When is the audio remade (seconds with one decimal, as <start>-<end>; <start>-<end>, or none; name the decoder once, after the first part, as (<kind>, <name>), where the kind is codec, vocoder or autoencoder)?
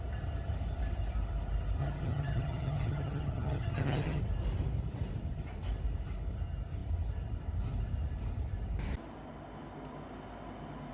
1.8-4.2 (vocoder, HiFi-GAN)